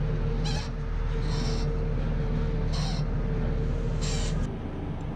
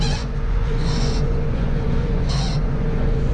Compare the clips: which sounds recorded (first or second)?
first